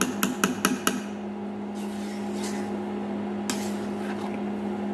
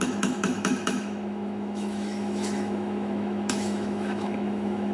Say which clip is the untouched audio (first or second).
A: first